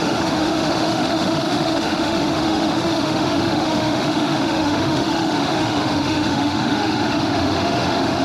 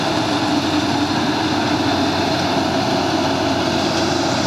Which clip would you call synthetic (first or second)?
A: first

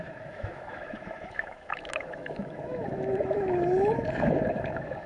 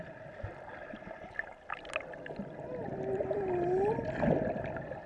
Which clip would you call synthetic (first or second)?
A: first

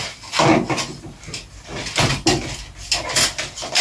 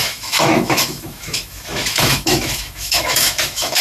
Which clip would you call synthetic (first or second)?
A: second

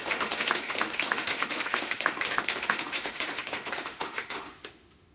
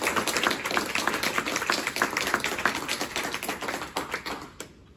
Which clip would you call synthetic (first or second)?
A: first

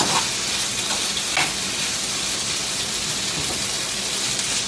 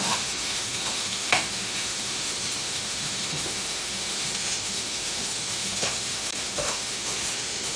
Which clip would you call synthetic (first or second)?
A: second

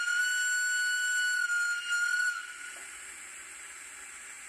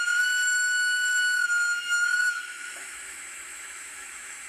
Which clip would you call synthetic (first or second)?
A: second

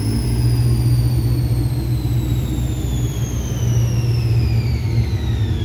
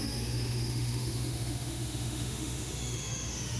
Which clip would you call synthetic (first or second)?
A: second